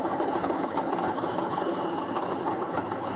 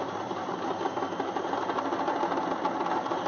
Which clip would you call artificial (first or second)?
first